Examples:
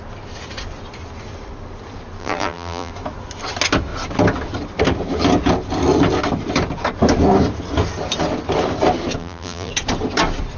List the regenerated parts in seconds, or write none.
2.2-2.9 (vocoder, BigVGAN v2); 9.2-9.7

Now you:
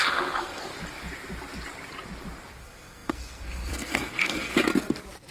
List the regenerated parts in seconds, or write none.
0.0-0.7 (codec, SNAC); 2.6-4.7

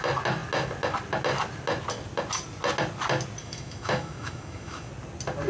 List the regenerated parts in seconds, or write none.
3.4-4.9 (autoencoder, DAC-VAE)